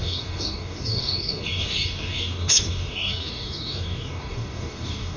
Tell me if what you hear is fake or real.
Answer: fake